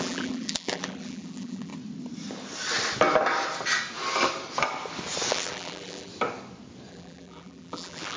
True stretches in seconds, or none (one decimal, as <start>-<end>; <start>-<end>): 1.7-5.3; 6.1-6.9